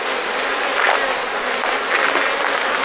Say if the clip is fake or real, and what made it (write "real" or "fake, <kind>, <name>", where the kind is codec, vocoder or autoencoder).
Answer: real